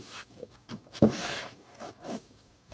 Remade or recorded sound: remade